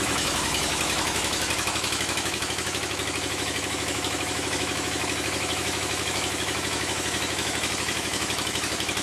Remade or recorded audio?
remade